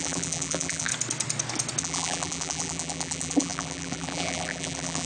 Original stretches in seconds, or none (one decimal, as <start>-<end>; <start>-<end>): 0.9-1.8